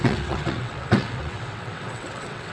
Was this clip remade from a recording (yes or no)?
yes